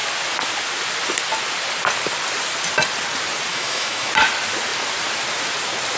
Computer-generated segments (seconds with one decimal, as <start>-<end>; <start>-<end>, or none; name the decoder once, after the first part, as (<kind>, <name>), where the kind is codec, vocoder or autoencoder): 3.5-4.1 (autoencoder, DAC-VAE)